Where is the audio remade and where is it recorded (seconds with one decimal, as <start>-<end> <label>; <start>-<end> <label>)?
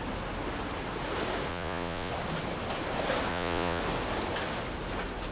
0.0-1.5 recorded; 1.5-2.1 remade; 2.1-3.3 recorded; 3.3-3.8 remade; 3.8-5.3 recorded